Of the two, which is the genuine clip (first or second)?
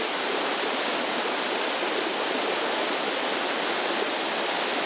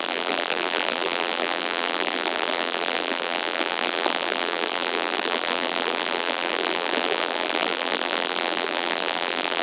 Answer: first